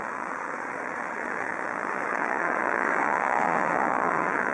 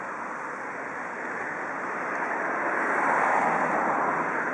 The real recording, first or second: second